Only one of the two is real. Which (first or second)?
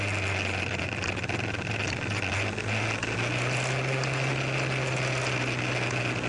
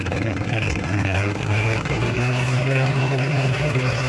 first